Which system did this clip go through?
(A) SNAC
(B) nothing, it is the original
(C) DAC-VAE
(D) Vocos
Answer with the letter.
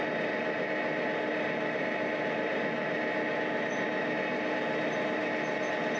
B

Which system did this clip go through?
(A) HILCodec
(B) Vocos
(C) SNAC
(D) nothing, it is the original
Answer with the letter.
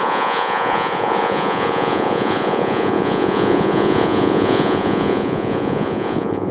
B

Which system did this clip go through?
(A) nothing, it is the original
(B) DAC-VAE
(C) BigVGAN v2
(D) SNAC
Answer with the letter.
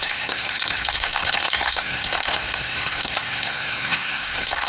D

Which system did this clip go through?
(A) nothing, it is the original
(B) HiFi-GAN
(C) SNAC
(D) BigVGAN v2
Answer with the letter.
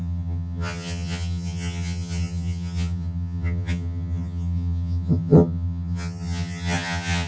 B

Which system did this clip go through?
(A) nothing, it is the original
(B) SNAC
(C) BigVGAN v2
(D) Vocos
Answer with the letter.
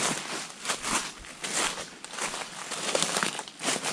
A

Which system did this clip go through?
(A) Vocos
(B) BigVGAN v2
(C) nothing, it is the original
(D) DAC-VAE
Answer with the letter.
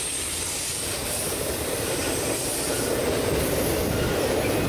B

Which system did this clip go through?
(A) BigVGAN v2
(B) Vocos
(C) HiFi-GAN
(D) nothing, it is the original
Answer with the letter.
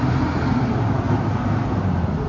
D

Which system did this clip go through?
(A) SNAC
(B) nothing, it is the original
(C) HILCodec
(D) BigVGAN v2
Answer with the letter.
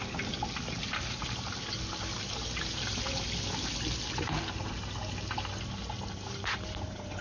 B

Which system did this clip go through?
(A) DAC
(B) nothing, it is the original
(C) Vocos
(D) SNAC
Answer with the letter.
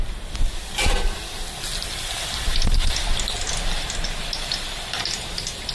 B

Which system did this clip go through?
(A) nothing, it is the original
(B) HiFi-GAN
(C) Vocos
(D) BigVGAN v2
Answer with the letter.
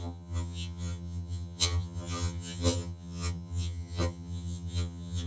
B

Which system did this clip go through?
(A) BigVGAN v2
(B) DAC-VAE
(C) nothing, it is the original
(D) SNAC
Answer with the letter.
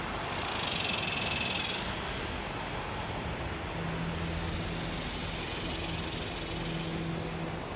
C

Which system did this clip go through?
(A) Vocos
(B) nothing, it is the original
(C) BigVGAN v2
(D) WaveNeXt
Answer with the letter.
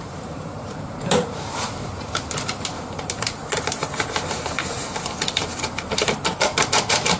C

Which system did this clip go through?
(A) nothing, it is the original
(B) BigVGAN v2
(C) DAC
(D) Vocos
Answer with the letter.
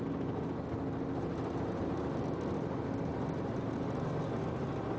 A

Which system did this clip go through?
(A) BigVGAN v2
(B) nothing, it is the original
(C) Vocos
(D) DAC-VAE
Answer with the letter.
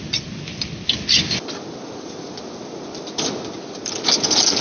B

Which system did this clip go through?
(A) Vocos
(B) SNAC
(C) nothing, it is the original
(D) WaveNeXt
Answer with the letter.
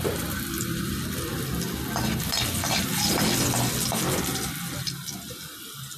C